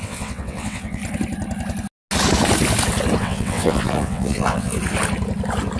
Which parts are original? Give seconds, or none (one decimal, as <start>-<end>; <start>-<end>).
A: 1.0-3.2; 4.7-5.8